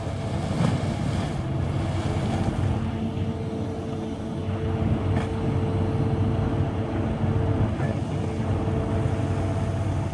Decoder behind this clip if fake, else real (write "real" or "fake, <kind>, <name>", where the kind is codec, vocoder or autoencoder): real